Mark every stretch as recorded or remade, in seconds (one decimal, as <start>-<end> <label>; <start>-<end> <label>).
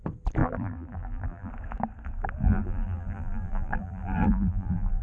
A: 0.0-0.4 recorded; 0.4-1.5 remade; 1.5-2.4 recorded; 2.4-5.0 remade